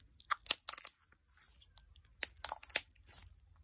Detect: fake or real real